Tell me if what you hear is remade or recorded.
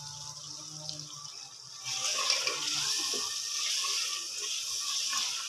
recorded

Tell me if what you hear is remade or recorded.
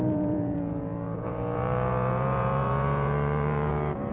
remade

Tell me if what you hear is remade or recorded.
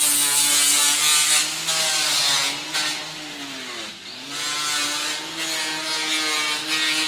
recorded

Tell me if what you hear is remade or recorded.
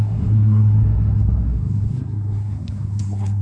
remade